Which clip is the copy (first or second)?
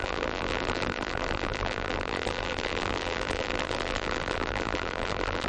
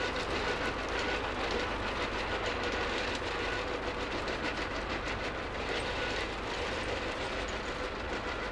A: first